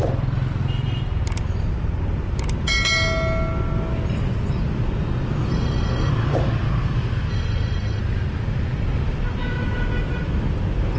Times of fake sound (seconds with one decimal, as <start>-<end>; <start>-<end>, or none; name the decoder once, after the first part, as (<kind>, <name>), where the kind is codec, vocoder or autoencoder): 5.5-6.1 (autoencoder, DAC-VAE); 7.3-8.0